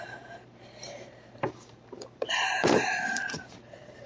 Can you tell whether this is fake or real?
fake